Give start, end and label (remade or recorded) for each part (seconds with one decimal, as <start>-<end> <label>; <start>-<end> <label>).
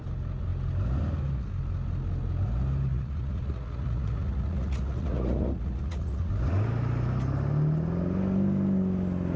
0.0-2.9 recorded; 2.9-6.3 remade; 6.3-9.4 recorded